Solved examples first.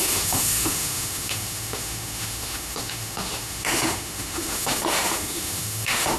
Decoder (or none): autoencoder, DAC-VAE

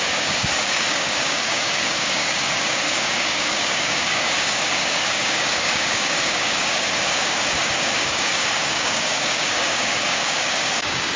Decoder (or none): codec, DAC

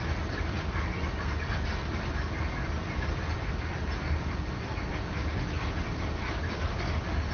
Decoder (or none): none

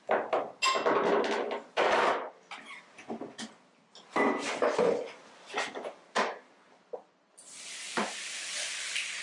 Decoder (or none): none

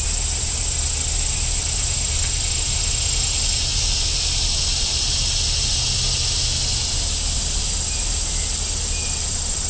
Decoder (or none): none